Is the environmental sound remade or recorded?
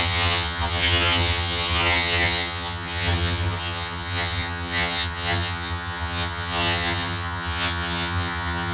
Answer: remade